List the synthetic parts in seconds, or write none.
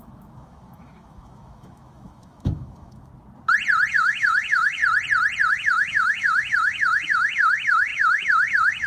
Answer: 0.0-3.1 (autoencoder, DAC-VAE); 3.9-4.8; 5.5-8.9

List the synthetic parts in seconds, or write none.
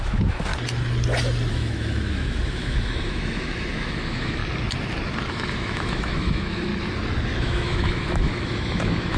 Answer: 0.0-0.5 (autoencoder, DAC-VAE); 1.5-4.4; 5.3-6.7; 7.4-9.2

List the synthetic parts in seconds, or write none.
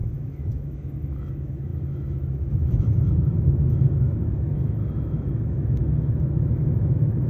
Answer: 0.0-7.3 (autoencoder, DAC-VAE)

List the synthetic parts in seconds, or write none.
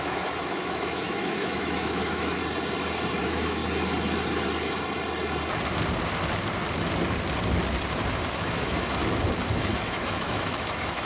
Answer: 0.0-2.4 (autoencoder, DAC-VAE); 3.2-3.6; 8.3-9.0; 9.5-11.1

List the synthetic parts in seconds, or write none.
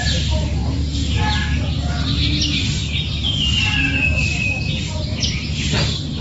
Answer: none